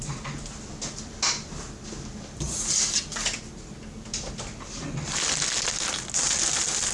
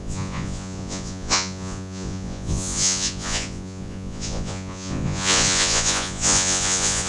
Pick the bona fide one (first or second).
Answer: first